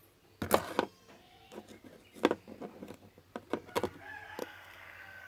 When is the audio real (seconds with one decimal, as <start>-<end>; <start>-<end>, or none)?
0.0-4.4

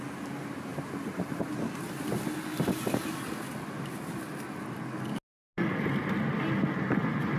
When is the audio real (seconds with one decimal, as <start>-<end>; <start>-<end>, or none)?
0.0-7.4